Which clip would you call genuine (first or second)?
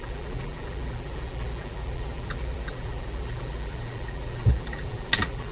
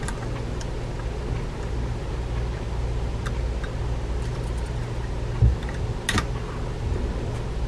second